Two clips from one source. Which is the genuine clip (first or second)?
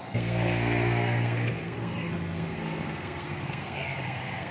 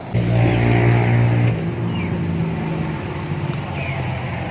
second